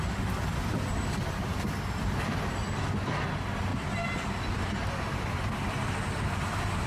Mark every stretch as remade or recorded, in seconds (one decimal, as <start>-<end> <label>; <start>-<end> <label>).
0.0-3.7 recorded; 3.7-4.7 remade; 4.7-6.9 recorded